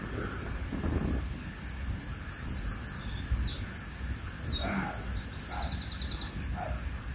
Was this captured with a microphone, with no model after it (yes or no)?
yes